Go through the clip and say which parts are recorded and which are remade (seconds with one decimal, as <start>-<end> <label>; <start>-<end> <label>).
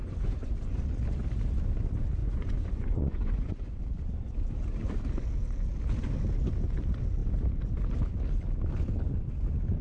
0.0-0.5 remade; 0.5-2.2 recorded; 2.2-3.8 remade; 3.8-9.8 recorded